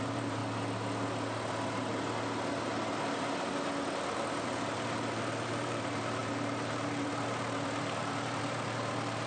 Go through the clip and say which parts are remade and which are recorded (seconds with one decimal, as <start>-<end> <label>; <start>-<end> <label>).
0.0-0.4 remade; 0.4-4.3 recorded; 4.3-9.3 remade